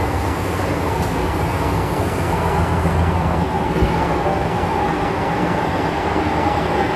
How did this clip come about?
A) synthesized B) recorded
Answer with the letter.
A